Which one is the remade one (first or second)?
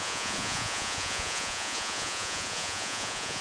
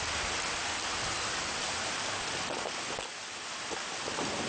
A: first